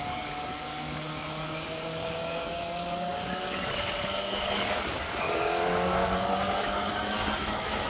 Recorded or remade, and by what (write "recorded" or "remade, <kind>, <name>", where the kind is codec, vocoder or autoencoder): remade, codec, DAC